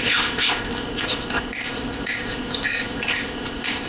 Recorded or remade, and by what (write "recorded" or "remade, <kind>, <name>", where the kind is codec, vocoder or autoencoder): remade, codec, ZipCodec